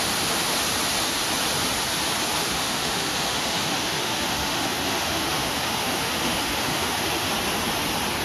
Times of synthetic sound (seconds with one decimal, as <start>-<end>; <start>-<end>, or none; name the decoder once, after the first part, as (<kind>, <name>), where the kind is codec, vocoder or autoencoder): 2.4-7.3 (autoencoder, DAC-VAE)